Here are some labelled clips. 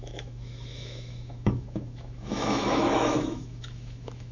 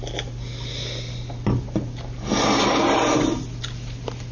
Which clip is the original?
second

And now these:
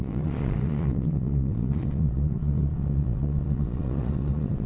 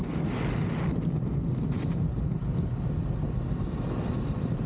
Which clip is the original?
second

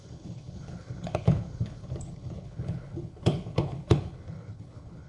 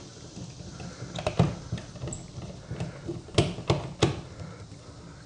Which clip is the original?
second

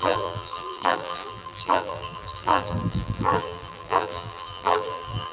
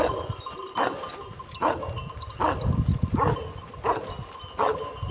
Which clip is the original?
second